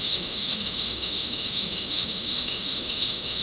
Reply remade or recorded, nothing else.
remade